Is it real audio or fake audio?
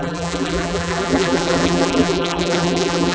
fake